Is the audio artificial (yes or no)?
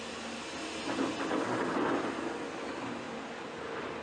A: no